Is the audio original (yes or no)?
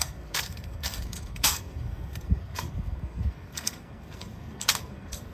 no